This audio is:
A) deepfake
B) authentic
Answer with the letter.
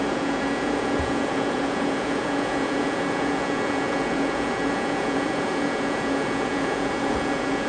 A